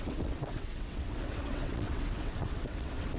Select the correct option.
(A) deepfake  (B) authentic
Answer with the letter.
A